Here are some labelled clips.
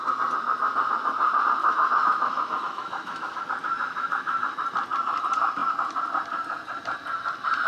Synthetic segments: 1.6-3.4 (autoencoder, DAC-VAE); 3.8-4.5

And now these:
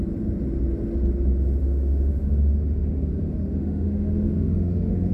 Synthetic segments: 1.6-5.1 (autoencoder, DAC-VAE)